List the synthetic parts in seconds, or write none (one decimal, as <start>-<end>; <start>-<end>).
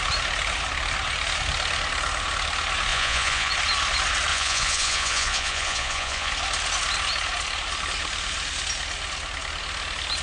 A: 2.9-3.5; 4.3-6.3